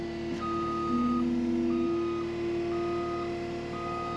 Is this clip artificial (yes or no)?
no